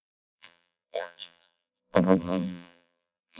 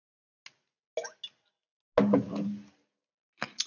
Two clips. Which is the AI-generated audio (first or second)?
first